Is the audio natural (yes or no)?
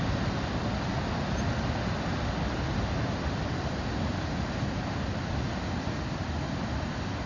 yes